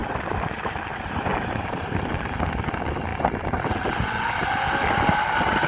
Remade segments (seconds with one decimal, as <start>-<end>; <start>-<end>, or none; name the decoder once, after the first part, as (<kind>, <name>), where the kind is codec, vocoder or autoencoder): 0.0-1.3 (vocoder, BigVGAN v2); 2.1-3.1